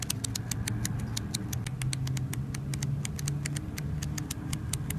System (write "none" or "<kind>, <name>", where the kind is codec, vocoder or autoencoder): none